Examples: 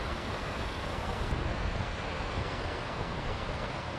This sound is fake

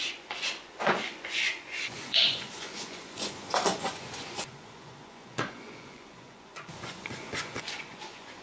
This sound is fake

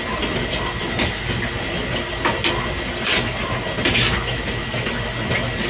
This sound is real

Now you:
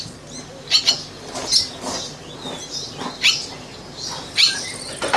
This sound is real